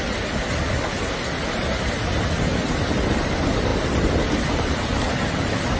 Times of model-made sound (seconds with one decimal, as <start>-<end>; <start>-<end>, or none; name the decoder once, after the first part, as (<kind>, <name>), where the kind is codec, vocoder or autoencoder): none